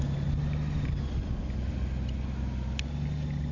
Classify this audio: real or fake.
real